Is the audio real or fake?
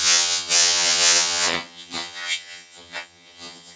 fake